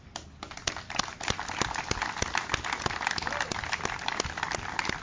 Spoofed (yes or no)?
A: no